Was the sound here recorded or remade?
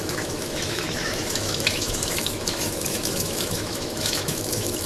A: remade